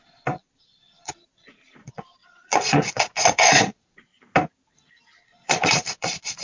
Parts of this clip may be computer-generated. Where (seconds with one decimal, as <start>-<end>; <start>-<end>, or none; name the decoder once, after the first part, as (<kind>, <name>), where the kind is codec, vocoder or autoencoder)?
0.0-4.1 (vocoder, Vocos); 5.2-6.4